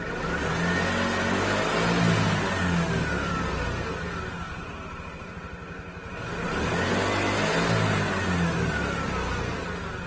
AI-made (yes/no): no